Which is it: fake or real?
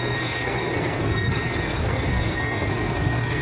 fake